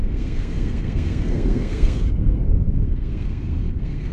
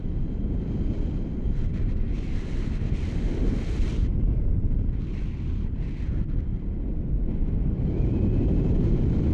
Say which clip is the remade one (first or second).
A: first